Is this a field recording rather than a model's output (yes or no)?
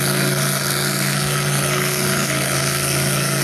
no